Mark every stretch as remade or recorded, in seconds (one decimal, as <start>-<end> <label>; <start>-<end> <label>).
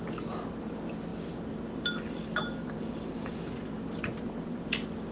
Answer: 0.0-5.1 recorded